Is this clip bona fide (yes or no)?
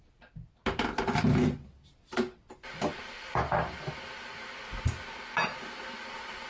yes